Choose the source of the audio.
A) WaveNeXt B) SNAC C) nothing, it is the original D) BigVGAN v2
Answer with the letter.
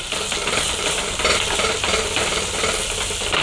C